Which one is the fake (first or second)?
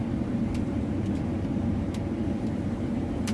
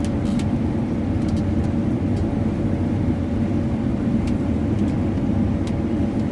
first